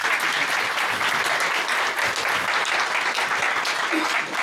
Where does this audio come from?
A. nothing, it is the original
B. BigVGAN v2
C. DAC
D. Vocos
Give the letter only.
A